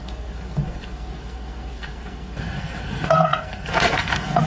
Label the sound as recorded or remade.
remade